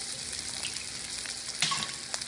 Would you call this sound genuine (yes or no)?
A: yes